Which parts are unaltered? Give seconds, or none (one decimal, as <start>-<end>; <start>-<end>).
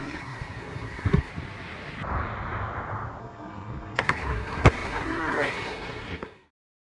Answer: 1.3-3.2